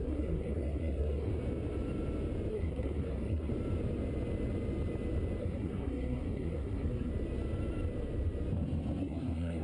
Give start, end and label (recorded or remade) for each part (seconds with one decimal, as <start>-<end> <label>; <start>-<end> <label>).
0.0-1.3 remade; 1.3-2.5 recorded; 2.5-3.5 remade; 3.5-5.4 recorded; 5.4-7.1 remade; 7.1-9.0 recorded; 9.0-9.6 remade